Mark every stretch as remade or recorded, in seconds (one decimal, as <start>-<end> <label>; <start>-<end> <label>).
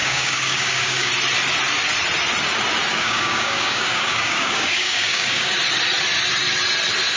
0.0-1.1 remade; 1.1-2.9 recorded; 2.9-5.5 remade; 5.5-7.2 recorded